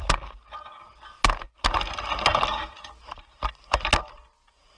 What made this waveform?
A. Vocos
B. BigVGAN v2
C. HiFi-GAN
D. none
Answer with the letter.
D